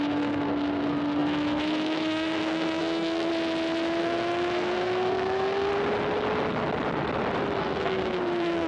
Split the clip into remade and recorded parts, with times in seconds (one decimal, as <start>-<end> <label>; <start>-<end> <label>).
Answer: 0.0-3.3 remade; 3.3-4.0 recorded; 4.0-5.7 remade; 5.7-7.6 recorded; 7.6-8.7 remade